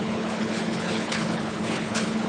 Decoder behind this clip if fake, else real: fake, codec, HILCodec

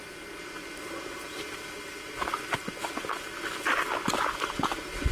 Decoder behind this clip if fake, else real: real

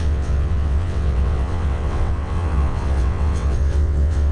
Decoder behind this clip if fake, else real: fake, vocoder, WaveNeXt